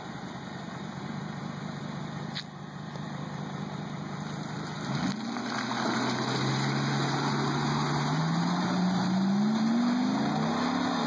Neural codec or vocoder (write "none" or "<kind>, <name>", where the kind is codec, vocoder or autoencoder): none